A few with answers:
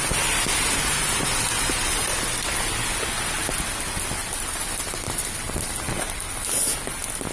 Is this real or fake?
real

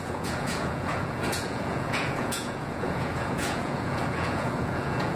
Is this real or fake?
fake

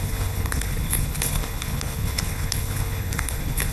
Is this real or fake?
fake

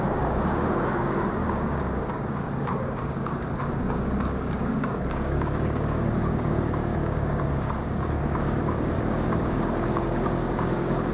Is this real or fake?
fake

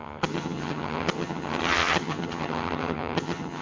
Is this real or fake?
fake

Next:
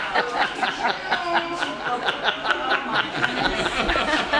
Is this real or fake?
real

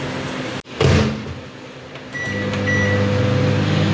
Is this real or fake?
real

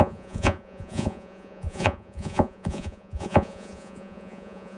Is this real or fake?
fake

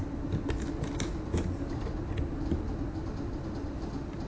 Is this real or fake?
real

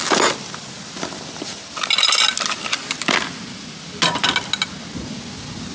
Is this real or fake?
real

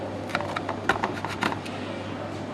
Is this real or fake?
real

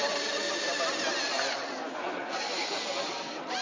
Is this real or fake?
real